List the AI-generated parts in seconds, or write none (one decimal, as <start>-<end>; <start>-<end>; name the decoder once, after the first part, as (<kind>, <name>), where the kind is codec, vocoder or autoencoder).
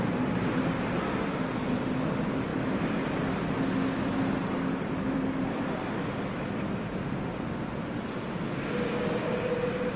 none